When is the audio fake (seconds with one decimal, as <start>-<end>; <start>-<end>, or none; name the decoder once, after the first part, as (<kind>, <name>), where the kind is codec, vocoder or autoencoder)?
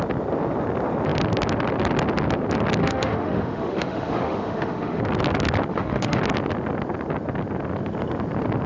2.8-5.0 (autoencoder, DAC-VAE); 5.7-6.2